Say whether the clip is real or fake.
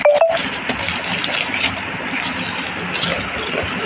real